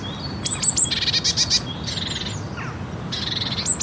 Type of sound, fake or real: real